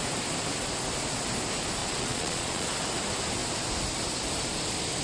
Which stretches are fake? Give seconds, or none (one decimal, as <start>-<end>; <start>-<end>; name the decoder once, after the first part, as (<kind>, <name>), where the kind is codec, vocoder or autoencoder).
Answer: 1.8-2.7 (vocoder, Vocos)

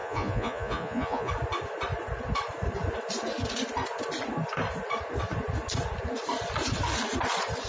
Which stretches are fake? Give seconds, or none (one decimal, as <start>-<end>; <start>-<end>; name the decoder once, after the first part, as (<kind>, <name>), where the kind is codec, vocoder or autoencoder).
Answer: 0.0-1.3 (vocoder, Vocos)

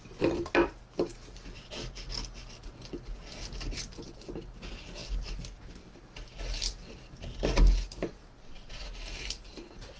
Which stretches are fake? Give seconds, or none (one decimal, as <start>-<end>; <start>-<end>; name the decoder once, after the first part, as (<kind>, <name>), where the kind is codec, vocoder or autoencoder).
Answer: none

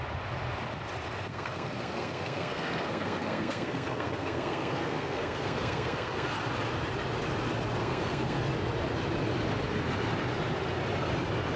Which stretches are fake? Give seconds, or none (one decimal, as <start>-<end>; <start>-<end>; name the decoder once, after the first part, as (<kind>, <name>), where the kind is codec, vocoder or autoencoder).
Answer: 1.3-6.3 (codec, SNAC); 7.8-8.4

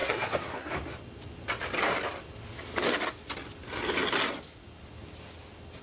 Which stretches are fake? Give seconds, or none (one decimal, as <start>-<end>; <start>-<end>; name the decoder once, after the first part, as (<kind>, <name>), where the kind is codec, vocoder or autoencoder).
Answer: 0.0-0.7 (codec, SNAC)

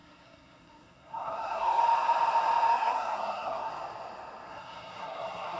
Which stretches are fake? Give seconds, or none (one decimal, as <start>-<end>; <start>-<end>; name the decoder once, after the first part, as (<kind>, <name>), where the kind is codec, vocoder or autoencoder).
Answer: 0.0-1.8 (codec, SNAC); 2.7-3.7; 4.5-5.6

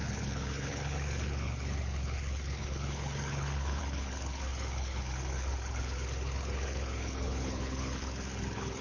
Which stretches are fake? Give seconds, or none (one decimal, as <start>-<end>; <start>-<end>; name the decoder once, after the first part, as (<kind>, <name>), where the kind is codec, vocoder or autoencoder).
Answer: 0.0-8.8 (codec, HILCodec)